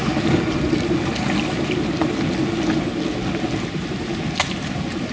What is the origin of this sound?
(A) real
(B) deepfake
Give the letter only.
A